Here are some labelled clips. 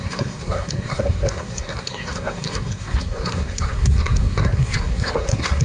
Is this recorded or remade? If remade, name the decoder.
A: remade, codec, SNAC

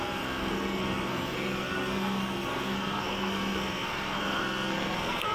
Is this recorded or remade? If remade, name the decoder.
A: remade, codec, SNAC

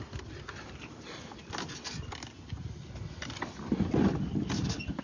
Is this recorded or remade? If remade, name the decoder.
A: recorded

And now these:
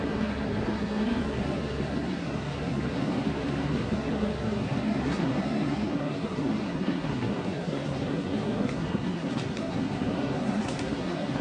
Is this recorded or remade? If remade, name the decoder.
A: remade, codec, SNAC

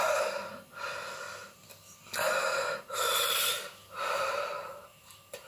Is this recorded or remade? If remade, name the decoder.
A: recorded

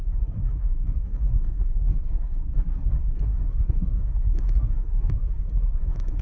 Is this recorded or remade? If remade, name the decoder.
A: remade, codec, SNAC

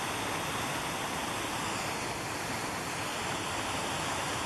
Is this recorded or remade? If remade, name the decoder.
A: recorded